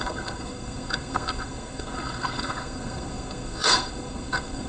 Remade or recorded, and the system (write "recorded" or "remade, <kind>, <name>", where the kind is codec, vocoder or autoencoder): remade, codec, SNAC